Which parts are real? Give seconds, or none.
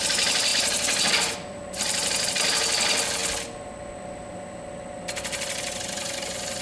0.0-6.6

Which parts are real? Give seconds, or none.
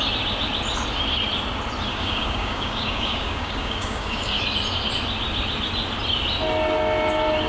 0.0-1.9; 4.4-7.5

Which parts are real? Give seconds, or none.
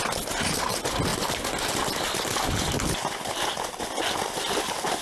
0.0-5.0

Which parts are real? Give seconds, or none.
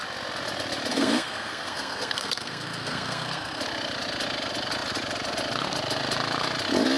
0.0-0.9; 3.6-7.0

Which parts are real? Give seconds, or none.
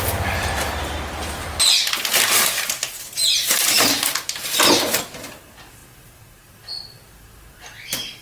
0.0-8.2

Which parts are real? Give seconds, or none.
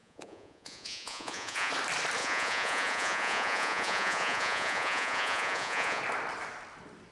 1.7-2.2; 6.0-7.1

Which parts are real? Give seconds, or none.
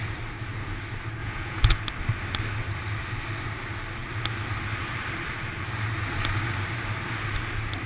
0.0-1.2; 1.8-7.9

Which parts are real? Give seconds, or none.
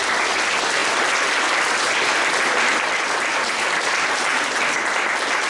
0.0-5.5